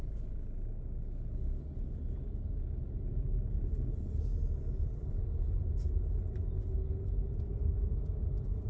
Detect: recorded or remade recorded